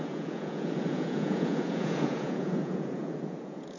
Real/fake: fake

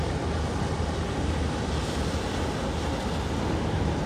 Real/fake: real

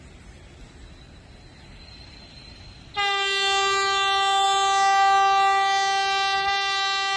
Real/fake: real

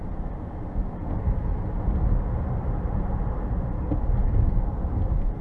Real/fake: real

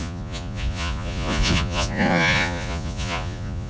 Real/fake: fake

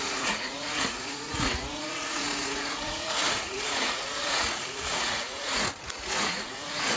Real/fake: fake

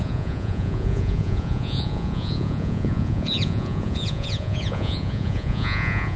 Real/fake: fake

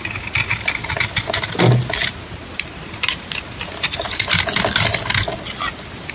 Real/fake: real